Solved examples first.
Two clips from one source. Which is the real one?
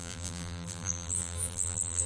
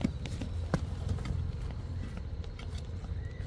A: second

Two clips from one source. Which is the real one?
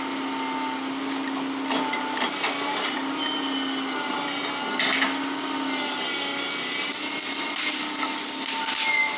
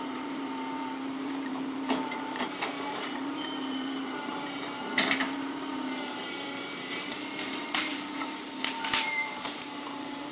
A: first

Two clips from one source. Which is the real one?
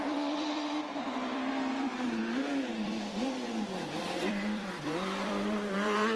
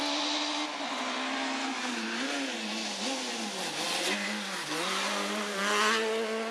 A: second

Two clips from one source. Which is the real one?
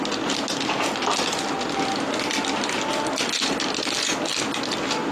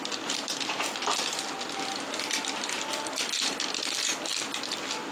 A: first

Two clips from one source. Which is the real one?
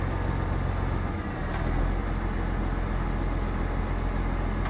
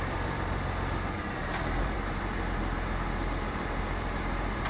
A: first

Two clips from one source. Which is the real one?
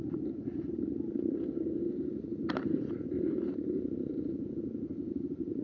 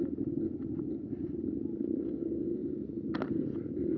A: second